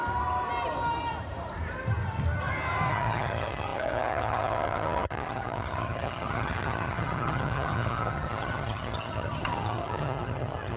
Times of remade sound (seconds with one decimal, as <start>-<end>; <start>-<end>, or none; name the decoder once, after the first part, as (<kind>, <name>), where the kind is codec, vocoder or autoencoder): 2.9-10.8 (vocoder, HiFi-GAN)